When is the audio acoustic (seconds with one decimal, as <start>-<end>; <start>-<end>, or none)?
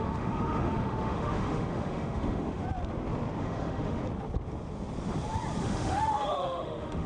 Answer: 2.6-3.4; 4.0-5.6